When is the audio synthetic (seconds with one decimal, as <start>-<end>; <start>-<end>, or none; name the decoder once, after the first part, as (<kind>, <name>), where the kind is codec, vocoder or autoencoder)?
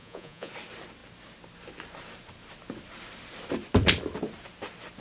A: 0.0-0.5 (vocoder, Vocos)